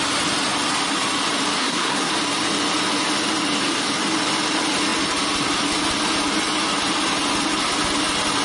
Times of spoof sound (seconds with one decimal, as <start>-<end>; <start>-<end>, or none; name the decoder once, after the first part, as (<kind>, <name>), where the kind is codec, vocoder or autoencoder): 1.6-2.1 (codec, SNAC)